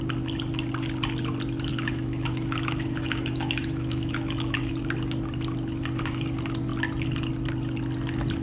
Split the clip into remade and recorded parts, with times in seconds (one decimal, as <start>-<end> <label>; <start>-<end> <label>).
0.0-1.7 recorded; 1.7-4.7 remade; 4.7-8.4 recorded